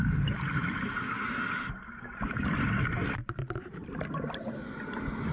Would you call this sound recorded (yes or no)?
yes